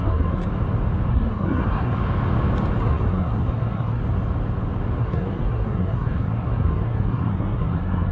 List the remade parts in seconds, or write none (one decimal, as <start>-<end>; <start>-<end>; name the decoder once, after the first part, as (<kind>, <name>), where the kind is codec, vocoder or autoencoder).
0.0-0.5 (codec, SNAC); 1.1-2.0; 2.8-4.0; 5.0-8.1